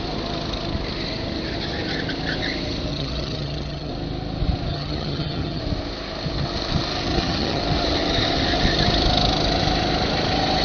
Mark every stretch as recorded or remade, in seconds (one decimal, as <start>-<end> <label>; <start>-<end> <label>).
0.0-2.9 recorded; 2.9-3.9 remade; 3.9-4.7 recorded; 4.7-5.6 remade; 5.6-7.1 recorded; 7.1-7.6 remade; 7.6-10.6 recorded